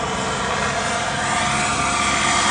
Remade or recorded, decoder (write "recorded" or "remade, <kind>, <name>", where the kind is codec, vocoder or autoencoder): recorded